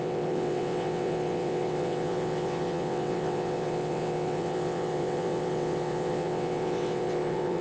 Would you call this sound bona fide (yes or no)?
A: no